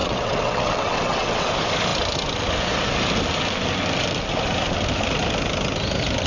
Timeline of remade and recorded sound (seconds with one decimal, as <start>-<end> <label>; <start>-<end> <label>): 0.0-1.5 remade; 1.5-6.3 recorded